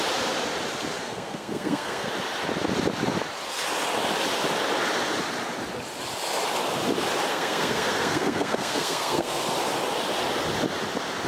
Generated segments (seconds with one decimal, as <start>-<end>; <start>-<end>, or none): 1.0-2.1; 7.3-9.4